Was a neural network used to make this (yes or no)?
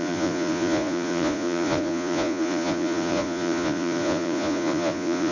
yes